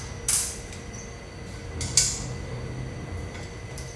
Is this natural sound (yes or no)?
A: yes